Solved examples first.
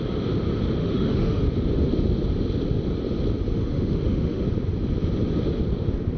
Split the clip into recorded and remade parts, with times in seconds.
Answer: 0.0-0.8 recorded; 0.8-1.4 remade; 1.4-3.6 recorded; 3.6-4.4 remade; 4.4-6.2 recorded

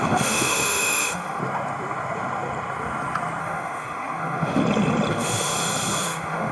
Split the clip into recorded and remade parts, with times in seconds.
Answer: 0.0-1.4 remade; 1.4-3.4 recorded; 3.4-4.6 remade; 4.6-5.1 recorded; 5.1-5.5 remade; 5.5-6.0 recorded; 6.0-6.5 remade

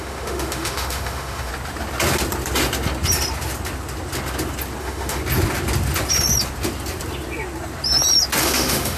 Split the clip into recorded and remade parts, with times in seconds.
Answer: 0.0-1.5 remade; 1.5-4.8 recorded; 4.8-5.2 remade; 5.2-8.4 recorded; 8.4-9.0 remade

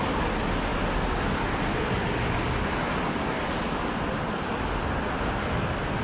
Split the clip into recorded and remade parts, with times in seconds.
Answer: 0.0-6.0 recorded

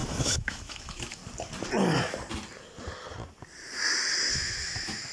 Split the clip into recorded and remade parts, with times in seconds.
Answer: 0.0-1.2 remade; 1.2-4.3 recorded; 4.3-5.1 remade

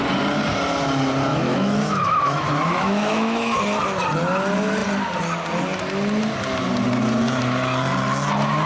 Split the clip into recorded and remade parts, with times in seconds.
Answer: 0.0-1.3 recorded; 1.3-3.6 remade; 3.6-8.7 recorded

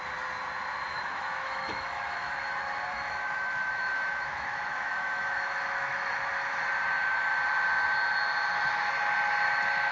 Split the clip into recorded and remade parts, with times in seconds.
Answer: 0.0-0.9 recorded; 0.9-2.4 remade; 2.4-2.9 recorded; 2.9-6.2 remade; 6.2-9.9 recorded